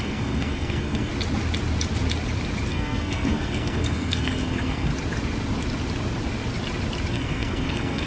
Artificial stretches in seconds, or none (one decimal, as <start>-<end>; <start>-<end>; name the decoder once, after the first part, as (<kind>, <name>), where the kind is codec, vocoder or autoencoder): 0.0-1.1 (codec, SNAC); 2.7-4.9; 7.1-8.1